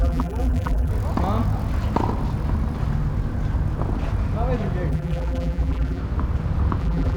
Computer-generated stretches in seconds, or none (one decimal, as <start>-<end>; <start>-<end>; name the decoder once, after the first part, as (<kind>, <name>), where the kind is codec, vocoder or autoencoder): 0.0-0.9 (vocoder, BigVGAN v2); 4.9-6.0; 6.8-7.2